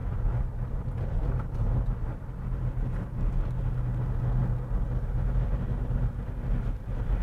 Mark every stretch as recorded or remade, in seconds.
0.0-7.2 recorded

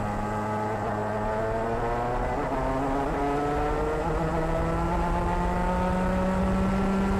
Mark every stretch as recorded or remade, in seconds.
0.0-7.2 recorded

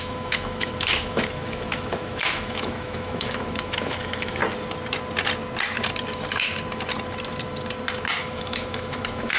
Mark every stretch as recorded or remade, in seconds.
0.0-4.4 remade; 4.4-8.2 recorded; 8.2-9.4 remade